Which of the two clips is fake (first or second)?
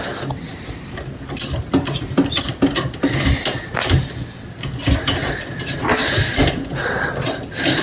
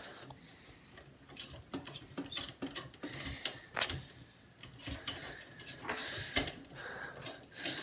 second